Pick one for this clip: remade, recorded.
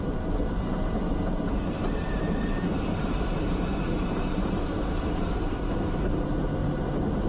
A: remade